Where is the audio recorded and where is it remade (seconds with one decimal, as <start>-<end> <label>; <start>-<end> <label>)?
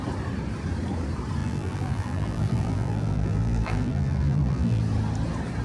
0.0-1.4 recorded; 1.4-4.8 remade; 4.8-5.6 recorded